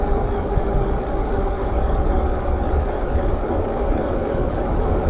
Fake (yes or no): yes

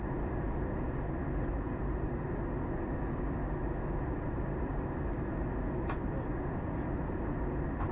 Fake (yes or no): no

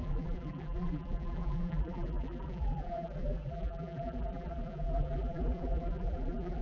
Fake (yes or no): yes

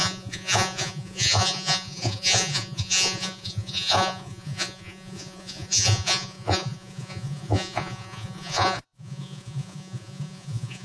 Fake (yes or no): yes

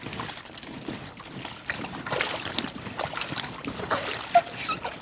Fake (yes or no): no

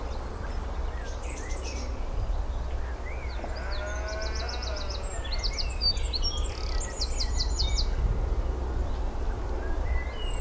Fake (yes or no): no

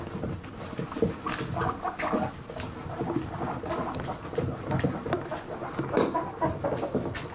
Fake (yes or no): no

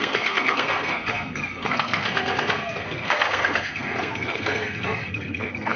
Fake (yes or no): yes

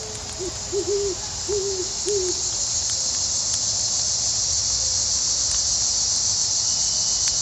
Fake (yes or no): no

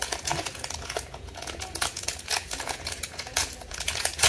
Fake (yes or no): yes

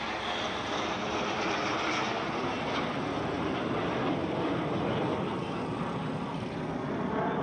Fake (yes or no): no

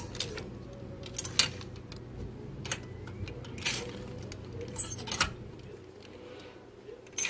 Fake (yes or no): no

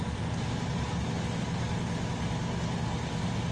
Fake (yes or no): no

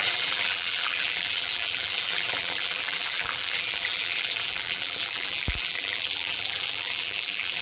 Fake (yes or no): yes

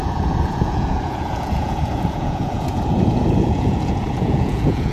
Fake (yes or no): yes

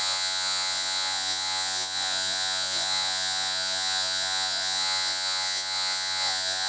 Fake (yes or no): yes